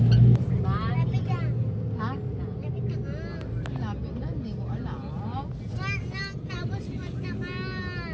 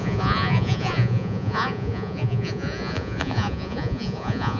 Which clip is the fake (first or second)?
second